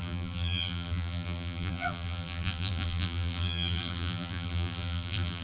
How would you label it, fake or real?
fake